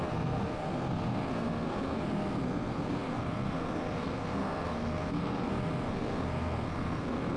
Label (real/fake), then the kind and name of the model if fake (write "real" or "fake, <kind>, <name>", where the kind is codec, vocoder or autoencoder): fake, codec, SNAC